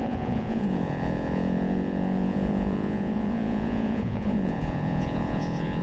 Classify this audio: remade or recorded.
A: remade